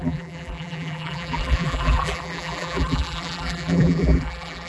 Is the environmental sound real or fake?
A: fake